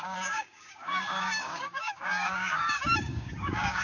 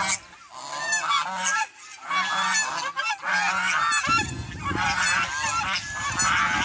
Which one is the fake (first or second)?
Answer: first